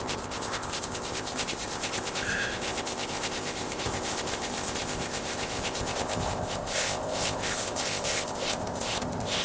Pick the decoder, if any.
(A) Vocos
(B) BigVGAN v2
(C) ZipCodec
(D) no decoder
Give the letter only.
C